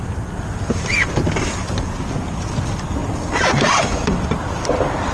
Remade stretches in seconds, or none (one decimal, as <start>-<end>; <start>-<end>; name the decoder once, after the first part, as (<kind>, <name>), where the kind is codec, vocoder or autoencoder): none